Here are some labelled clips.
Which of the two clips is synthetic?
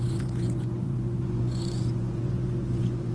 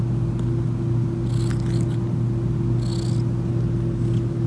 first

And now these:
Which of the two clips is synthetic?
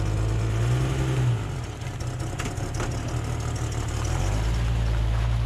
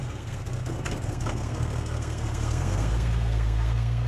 second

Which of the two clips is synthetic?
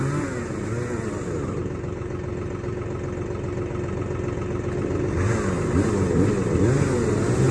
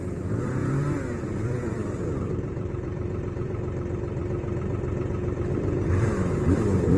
second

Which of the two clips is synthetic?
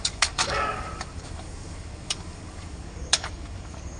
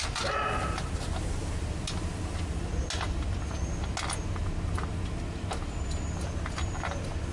first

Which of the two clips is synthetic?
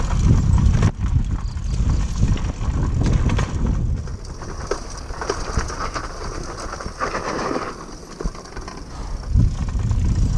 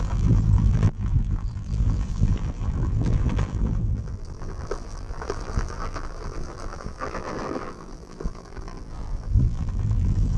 second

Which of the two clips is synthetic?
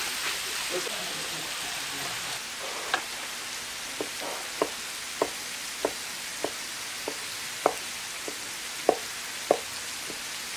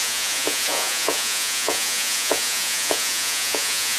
second